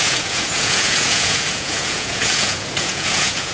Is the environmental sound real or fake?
fake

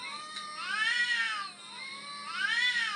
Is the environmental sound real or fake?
real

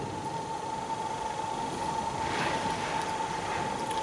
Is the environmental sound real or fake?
real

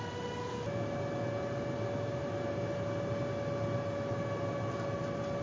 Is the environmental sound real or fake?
real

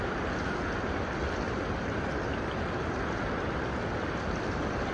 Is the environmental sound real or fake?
real